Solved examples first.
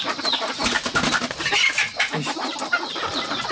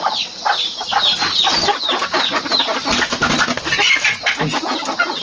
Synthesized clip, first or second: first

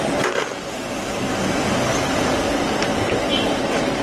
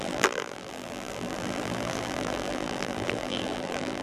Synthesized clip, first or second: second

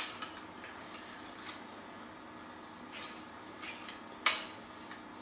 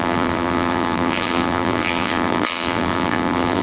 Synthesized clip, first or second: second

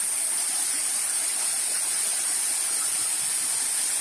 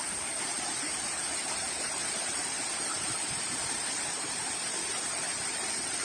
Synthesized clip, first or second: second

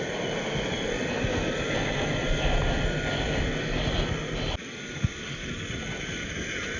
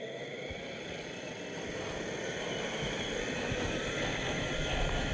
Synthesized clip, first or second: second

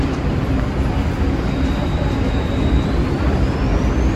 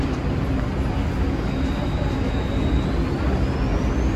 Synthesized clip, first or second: first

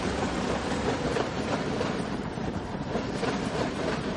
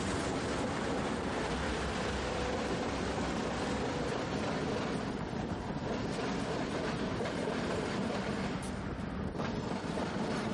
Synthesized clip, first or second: first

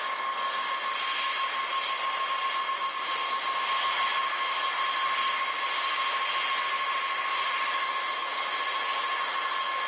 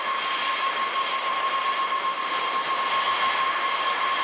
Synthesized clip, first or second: second